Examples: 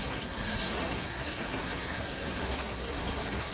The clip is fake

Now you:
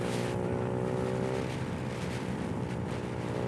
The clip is real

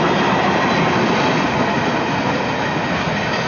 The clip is real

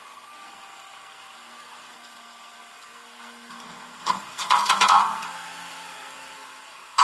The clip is fake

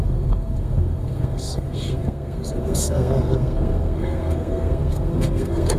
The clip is fake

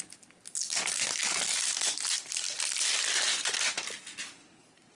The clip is real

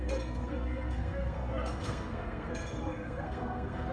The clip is fake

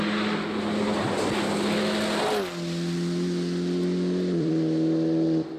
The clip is real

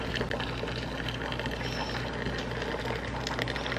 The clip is real